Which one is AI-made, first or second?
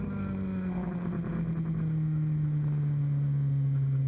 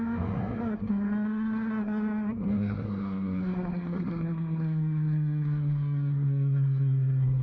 second